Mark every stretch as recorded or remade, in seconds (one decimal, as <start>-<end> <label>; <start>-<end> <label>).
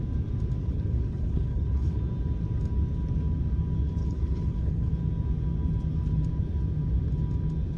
0.0-0.6 recorded; 0.6-2.0 remade; 2.0-4.0 recorded; 4.0-4.9 remade; 4.9-7.8 recorded